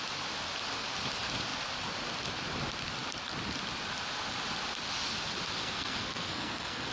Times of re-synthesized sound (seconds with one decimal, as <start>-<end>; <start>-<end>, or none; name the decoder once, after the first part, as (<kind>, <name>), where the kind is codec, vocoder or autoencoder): 5.6-6.9 (codec, SNAC)